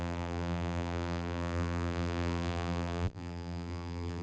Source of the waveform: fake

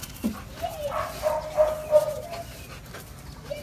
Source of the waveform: real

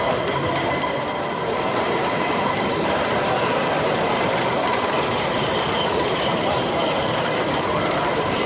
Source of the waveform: fake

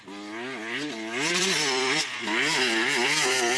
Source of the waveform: fake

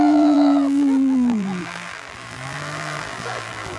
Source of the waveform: fake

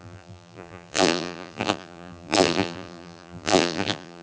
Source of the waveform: fake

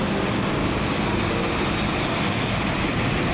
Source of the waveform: real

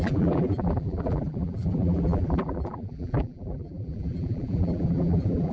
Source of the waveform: fake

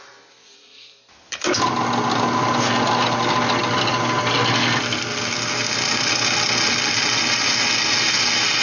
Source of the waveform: real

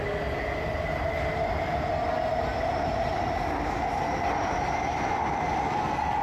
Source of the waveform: real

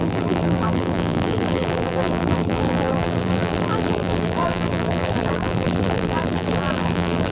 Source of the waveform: fake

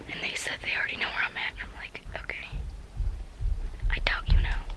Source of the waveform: real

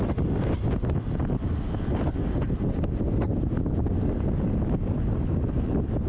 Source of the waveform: real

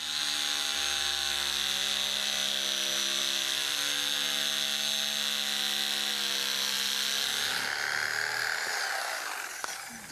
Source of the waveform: real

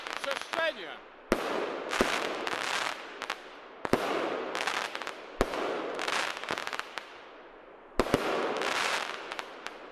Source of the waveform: real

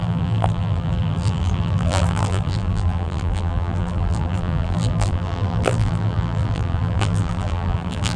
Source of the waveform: fake